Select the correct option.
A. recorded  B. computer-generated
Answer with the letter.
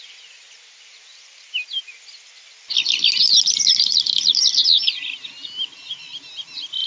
A